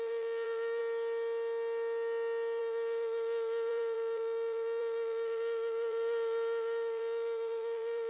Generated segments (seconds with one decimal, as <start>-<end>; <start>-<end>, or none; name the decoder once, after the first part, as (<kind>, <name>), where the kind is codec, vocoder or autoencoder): 0.0-0.8 (vocoder, BigVGAN v2); 2.6-8.1